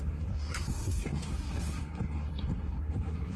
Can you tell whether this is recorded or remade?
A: remade